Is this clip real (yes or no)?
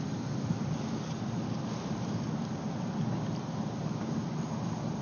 yes